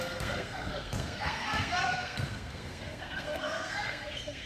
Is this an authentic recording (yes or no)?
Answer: no